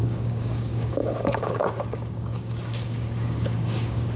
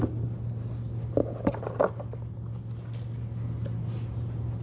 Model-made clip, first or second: first